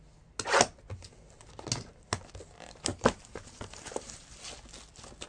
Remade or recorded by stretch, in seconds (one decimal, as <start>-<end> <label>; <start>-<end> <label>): 0.0-2.9 recorded; 2.9-4.4 remade; 4.4-5.3 recorded